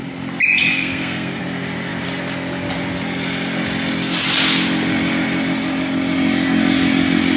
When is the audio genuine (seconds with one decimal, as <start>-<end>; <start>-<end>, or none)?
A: 0.0-0.7; 1.4-7.4